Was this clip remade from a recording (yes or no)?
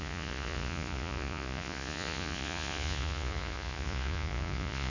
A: yes